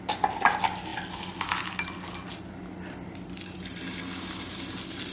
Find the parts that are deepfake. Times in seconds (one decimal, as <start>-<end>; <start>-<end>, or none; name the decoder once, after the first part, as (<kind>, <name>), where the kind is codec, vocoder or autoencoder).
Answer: none